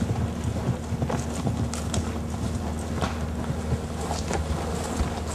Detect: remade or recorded recorded